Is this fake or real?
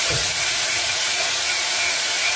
fake